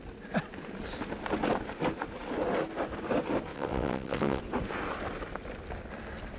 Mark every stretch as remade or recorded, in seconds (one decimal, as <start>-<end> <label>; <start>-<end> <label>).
0.0-3.5 recorded; 3.5-4.4 remade; 4.4-6.4 recorded